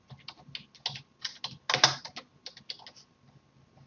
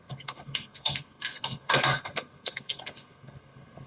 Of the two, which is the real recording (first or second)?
first